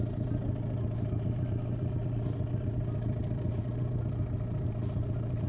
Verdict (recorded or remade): recorded